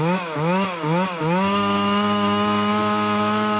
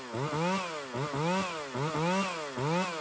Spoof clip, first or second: first